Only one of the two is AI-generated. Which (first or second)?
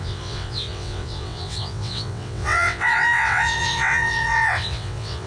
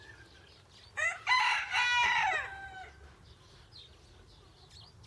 first